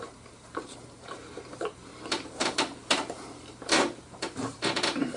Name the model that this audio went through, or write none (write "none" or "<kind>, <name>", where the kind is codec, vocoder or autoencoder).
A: vocoder, BigVGAN v2